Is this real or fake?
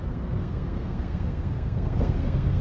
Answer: fake